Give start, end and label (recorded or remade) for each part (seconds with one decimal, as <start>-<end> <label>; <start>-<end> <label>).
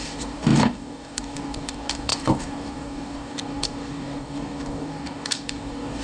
0.0-6.0 remade